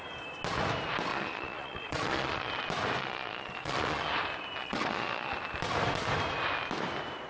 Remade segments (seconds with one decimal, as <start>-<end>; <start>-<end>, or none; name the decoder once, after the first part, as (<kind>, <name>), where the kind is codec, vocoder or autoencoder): 1.1-2.5 (vocoder, Vocos); 3.0-4.1; 4.6-5.3

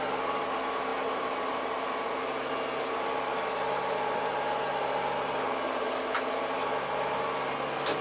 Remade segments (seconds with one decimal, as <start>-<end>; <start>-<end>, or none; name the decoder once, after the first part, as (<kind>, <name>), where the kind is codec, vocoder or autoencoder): none

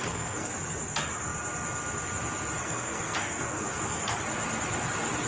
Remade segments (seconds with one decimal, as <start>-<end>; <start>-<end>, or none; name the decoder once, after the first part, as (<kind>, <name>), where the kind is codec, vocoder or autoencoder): 0.0-0.5 (codec, SNAC); 2.6-4.2

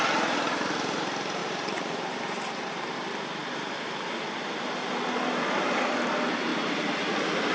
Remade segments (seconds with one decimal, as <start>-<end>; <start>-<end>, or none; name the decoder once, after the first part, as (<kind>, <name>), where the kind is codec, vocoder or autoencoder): 1.4-2.9 (vocoder, BigVGAN v2)

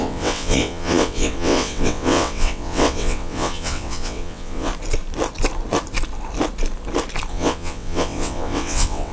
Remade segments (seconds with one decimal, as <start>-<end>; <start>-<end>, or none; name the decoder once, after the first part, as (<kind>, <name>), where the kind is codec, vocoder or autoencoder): 0.0-4.7 (vocoder, WaveNeXt); 7.3-9.1